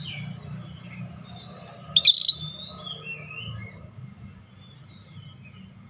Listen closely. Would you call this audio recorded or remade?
recorded